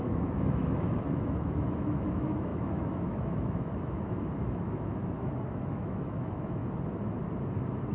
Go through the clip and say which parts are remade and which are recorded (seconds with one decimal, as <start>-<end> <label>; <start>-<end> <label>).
0.0-6.6 remade; 6.6-7.9 recorded